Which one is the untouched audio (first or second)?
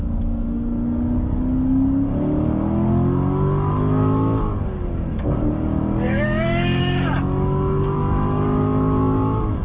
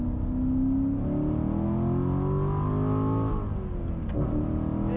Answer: second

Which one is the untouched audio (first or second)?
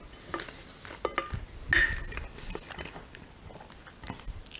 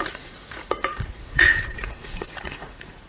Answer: first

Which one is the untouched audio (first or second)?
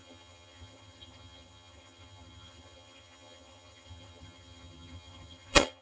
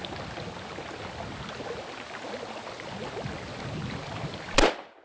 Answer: second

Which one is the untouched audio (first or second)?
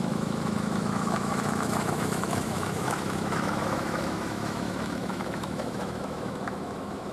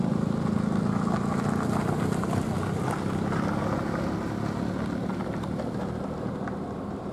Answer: second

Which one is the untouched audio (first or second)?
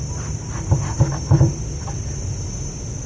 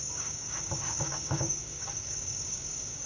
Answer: first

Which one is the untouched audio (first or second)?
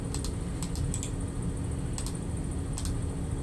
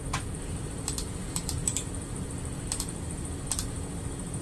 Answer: first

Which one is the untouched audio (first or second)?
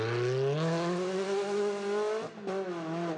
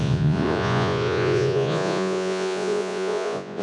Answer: first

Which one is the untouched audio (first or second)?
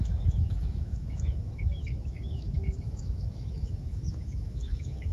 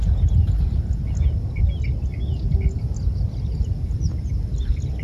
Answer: second